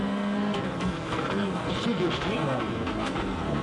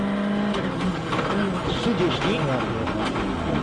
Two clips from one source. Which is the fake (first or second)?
first